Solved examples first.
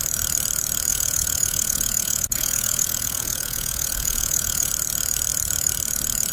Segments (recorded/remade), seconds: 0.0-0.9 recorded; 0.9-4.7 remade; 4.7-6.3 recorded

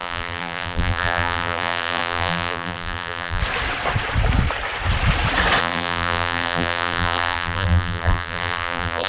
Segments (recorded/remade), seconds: 0.0-3.4 remade; 3.4-5.6 recorded; 5.6-9.1 remade

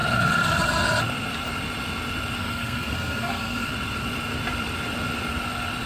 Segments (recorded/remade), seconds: 0.0-2.4 recorded; 2.4-3.7 remade; 3.7-5.9 recorded

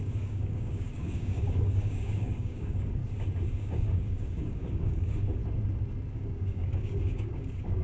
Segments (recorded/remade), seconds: 0.0-3.0 remade; 3.0-3.5 recorded; 3.5-5.4 remade; 5.4-6.1 recorded; 6.1-7.8 remade

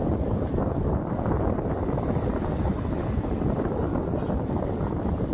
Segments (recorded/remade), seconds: 0.0-5.3 recorded